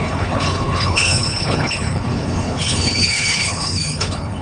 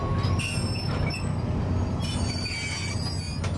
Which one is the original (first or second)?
second